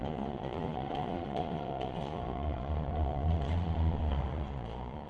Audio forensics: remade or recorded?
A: remade